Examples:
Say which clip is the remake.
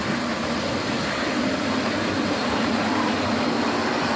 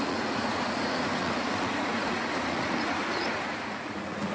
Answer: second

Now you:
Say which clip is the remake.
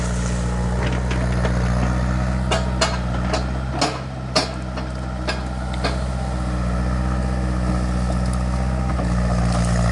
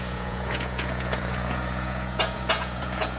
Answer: second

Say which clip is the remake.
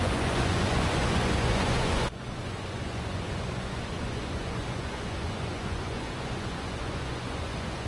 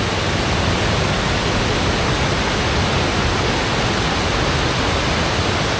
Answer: first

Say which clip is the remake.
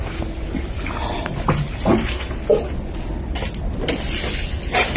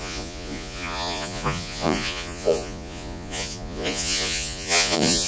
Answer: second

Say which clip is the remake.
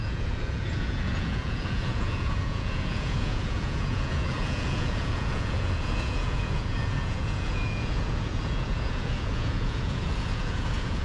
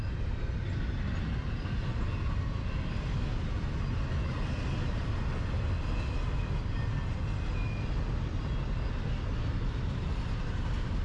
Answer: first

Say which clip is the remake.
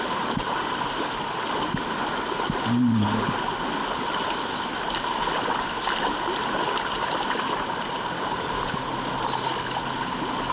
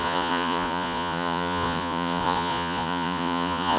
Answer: second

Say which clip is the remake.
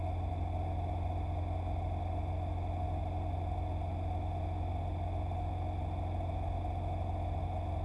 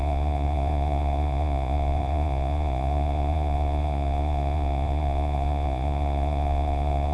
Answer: second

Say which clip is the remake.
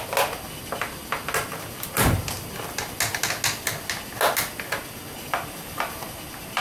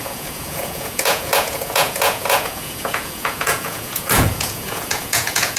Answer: second